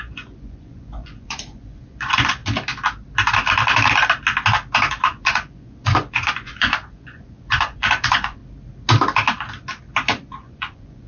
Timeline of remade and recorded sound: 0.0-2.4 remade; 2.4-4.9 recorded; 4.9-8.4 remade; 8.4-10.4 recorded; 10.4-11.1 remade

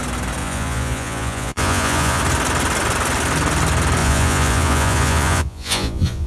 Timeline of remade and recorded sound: 0.0-0.4 recorded; 0.4-2.2 remade; 2.2-4.0 recorded; 4.0-6.3 remade